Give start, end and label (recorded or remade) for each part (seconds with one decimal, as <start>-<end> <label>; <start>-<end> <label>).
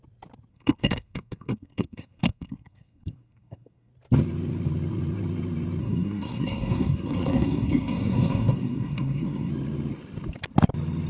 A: 0.0-0.5 recorded; 0.5-3.9 remade; 3.9-5.8 recorded; 5.8-9.5 remade; 9.5-11.1 recorded